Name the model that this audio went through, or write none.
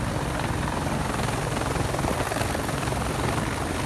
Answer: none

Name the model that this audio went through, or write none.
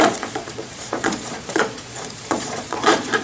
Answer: vocoder, Vocos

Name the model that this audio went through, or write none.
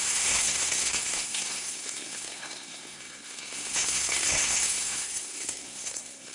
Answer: codec, SNAC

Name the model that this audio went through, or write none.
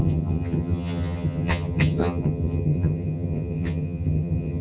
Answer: vocoder, HiFi-GAN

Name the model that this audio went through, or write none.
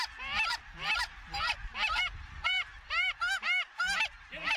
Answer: vocoder, BigVGAN v2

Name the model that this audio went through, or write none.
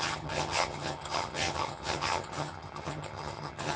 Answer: vocoder, HiFi-GAN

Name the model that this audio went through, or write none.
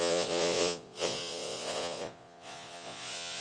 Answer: vocoder, Vocos